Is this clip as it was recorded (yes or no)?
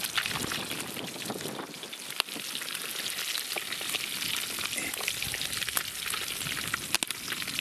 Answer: yes